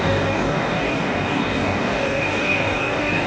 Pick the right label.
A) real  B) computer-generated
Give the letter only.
B